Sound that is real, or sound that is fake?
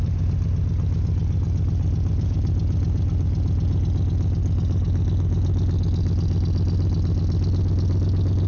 real